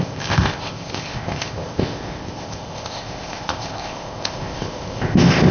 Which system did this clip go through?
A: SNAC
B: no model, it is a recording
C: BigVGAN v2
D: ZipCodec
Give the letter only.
D